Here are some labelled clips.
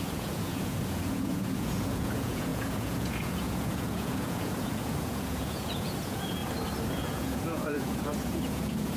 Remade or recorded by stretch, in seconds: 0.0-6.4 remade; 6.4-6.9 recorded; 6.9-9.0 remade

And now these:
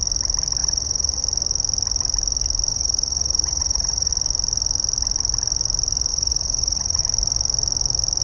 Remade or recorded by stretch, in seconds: 0.0-0.6 recorded; 0.6-1.2 remade; 1.2-2.7 recorded; 2.7-4.1 remade; 4.1-6.1 recorded; 6.1-7.0 remade; 7.0-8.2 recorded

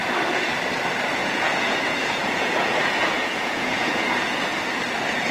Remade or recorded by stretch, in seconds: 0.0-1.2 recorded; 1.2-4.4 remade; 4.4-5.3 recorded

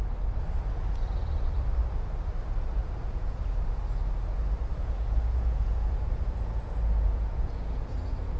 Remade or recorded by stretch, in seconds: 0.0-2.8 recorded; 2.8-3.4 remade; 3.4-4.7 recorded; 4.7-8.4 remade

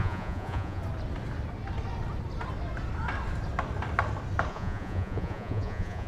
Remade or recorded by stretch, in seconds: 0.0-0.8 remade; 0.8-4.5 recorded; 4.5-6.1 remade